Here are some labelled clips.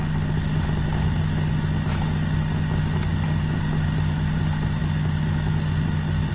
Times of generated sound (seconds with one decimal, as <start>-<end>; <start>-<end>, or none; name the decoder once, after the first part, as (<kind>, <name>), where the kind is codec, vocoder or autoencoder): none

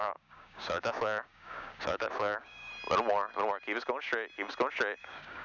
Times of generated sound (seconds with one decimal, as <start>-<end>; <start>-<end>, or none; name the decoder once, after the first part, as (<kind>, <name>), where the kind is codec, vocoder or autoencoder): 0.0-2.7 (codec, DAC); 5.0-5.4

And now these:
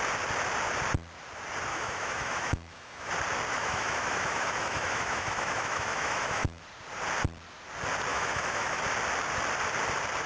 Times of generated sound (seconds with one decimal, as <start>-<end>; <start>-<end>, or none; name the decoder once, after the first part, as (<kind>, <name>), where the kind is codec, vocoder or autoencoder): 1.7-3.1 (autoencoder, DAC-VAE); 3.5-6.6; 8.1-8.8